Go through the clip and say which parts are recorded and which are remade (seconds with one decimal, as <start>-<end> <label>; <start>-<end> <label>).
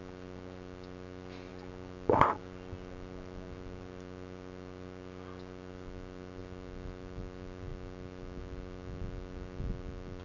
0.0-10.2 recorded